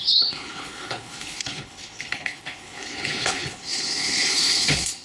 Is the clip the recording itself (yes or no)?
no